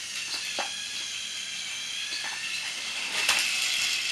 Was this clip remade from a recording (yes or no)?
no